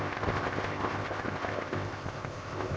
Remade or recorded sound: remade